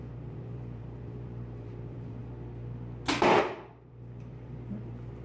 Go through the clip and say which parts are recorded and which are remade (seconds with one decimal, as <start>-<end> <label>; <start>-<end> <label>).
0.0-2.2 remade; 2.2-3.1 recorded; 3.1-5.2 remade